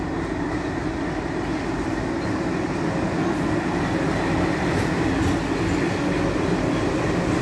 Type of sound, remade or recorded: recorded